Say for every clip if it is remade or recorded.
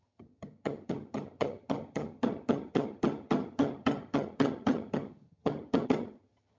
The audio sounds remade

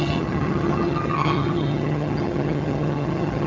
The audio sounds remade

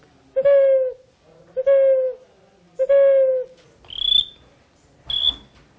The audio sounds recorded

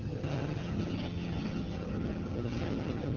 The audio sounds remade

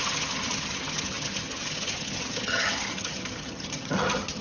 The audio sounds remade